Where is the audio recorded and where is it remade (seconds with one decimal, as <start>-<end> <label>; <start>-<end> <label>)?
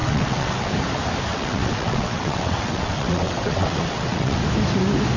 0.0-0.7 remade; 0.7-1.3 recorded; 1.3-4.4 remade; 4.4-5.2 recorded